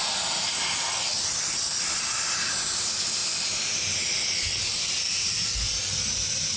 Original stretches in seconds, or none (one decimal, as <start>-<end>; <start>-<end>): 0.0-6.6